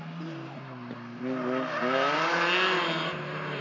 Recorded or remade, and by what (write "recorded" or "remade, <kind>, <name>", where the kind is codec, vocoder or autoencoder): recorded